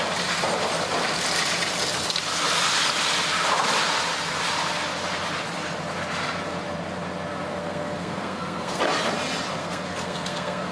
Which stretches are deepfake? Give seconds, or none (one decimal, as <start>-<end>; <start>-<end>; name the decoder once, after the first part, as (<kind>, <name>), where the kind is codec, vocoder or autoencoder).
7.6-8.8 (codec, SNAC); 9.6-10.7